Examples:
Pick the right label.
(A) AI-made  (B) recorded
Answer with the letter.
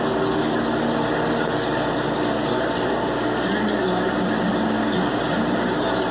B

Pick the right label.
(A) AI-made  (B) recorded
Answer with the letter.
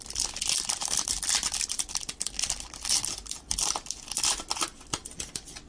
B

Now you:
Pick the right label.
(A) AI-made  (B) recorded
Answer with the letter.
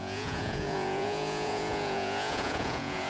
A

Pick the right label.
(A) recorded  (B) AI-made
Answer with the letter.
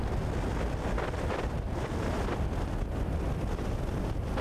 A